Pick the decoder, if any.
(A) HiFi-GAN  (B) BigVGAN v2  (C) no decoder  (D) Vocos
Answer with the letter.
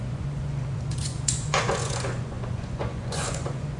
D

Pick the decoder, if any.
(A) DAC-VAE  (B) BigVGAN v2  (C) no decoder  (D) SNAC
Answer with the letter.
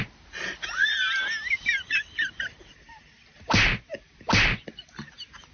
C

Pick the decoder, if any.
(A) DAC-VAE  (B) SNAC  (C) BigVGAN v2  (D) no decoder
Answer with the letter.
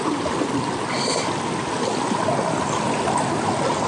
D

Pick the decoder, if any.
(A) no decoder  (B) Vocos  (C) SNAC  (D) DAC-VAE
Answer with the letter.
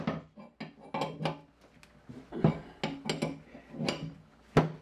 A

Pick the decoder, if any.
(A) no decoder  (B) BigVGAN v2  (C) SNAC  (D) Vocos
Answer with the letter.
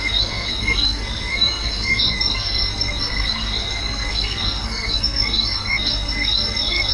C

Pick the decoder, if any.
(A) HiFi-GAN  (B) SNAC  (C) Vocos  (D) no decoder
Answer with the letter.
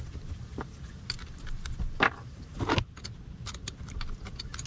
D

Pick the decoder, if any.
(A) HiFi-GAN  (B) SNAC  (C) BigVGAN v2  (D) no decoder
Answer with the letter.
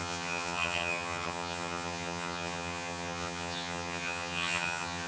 A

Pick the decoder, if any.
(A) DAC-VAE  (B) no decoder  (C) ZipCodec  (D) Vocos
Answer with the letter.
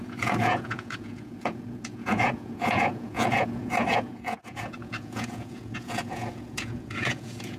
D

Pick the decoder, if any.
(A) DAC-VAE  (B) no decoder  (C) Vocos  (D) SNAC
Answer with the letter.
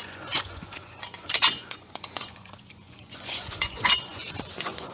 C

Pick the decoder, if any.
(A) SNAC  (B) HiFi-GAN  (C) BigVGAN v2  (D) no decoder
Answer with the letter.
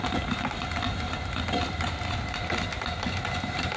D